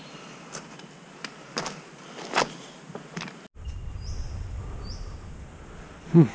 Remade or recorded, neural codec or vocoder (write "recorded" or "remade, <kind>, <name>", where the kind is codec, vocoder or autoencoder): recorded